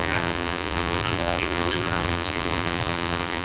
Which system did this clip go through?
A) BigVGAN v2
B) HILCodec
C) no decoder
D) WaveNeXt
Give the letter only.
A